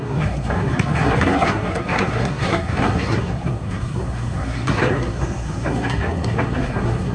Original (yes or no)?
no